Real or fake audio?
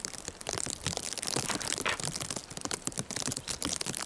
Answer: real